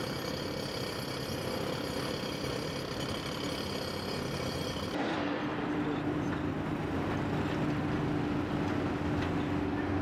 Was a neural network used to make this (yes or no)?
no